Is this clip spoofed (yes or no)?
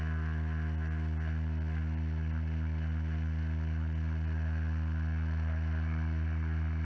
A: no